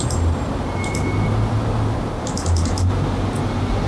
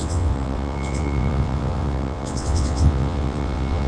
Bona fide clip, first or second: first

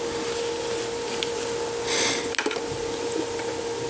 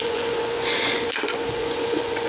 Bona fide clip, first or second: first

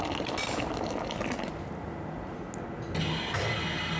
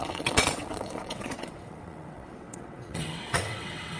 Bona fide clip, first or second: first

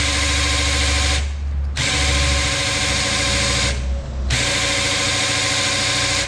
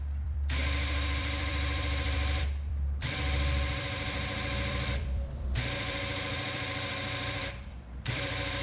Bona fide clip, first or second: first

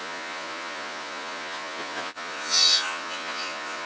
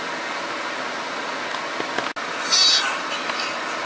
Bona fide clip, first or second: second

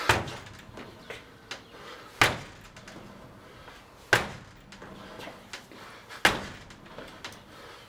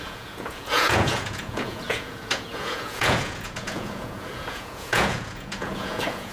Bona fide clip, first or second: first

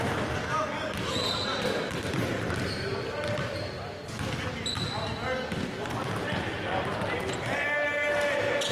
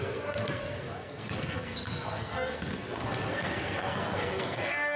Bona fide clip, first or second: first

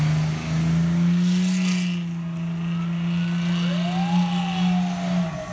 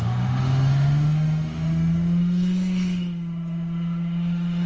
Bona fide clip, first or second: first